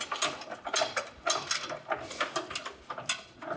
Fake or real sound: real